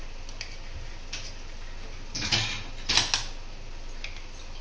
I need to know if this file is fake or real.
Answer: real